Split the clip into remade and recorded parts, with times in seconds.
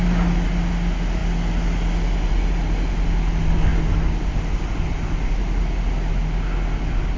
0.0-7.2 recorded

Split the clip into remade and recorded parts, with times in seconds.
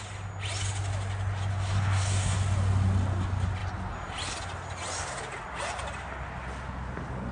0.0-1.5 recorded; 1.5-2.4 remade; 2.4-7.3 recorded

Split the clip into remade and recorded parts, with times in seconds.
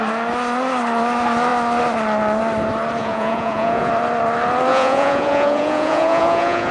0.0-3.0 recorded; 3.0-3.9 remade; 3.9-4.7 recorded; 4.7-6.7 remade